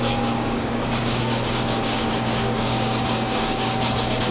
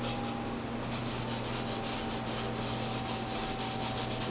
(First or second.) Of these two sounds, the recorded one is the second